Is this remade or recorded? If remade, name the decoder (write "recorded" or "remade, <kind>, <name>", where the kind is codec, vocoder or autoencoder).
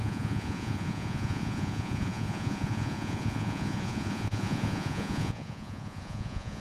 remade, vocoder, Vocos